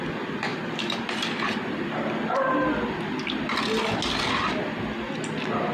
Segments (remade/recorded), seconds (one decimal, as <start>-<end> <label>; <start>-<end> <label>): 0.0-0.5 recorded; 0.5-1.1 remade; 1.1-5.7 recorded